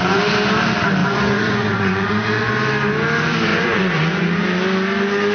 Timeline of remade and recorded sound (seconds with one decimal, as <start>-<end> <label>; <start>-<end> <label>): 0.0-1.0 recorded; 1.0-2.5 remade; 2.5-3.5 recorded; 3.5-4.4 remade; 4.4-5.3 recorded